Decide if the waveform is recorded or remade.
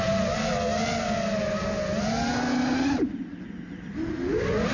recorded